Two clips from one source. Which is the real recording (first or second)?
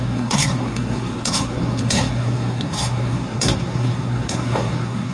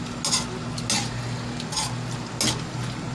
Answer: second